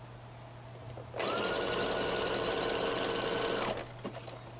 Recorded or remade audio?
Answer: recorded